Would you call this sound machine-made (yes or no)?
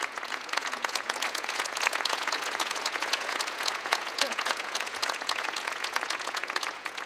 yes